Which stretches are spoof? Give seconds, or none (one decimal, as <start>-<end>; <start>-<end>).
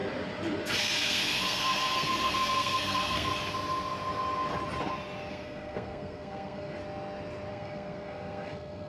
0.8-3.3; 5.3-6.8; 7.5-8.9